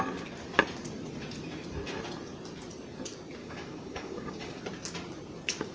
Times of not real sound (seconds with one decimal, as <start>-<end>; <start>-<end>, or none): 3.4-4.6